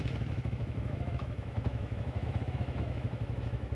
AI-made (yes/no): yes